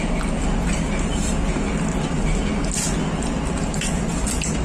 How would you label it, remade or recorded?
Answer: recorded